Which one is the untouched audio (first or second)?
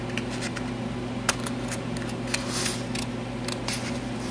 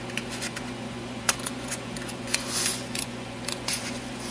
first